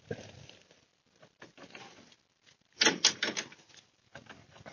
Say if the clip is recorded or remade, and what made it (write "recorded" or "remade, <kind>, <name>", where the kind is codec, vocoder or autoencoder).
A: recorded